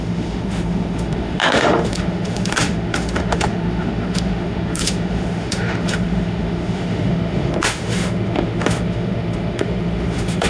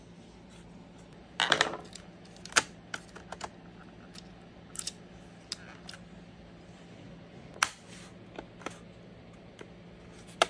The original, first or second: second